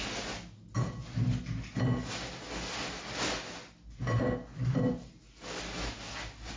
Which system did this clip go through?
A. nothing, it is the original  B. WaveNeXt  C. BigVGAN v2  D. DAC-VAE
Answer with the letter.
A